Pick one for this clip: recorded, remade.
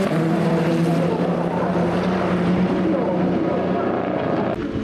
recorded